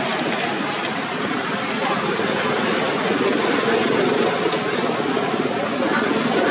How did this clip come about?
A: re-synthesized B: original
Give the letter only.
B